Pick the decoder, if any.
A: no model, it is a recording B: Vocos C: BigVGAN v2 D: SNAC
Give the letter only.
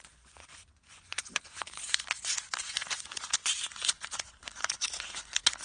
B